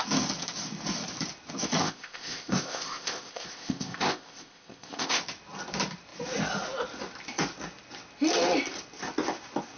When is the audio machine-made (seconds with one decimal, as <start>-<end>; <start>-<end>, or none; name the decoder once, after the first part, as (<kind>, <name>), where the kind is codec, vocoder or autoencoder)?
1.8-5.2 (codec, ZipCodec)